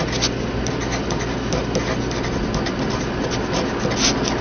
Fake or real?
real